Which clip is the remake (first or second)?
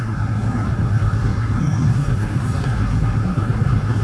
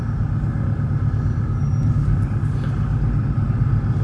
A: first